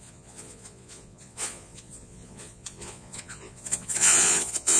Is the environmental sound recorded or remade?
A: remade